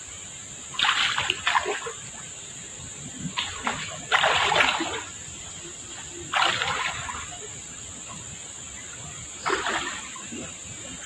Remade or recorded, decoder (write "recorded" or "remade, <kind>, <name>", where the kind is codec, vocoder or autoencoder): remade, vocoder, BigVGAN v2